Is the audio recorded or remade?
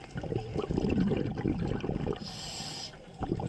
recorded